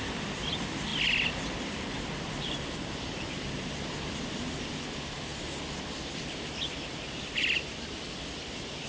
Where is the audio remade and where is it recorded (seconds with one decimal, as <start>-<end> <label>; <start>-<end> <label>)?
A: 0.0-5.3 remade; 5.3-6.1 recorded; 6.1-8.9 remade